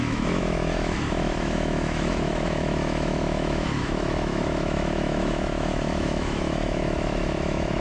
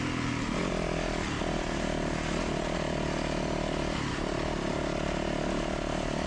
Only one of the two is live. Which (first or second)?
second